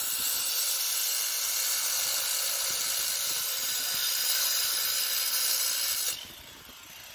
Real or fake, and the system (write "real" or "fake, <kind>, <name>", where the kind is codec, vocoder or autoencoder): fake, vocoder, BigVGAN v2